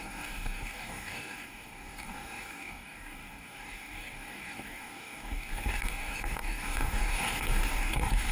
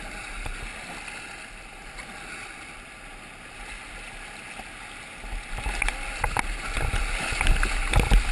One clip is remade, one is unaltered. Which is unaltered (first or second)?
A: second